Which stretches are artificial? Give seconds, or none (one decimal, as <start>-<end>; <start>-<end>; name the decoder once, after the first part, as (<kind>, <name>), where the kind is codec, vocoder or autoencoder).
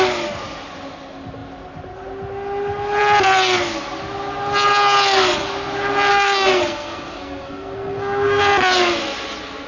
6.1-8.4 (codec, SNAC)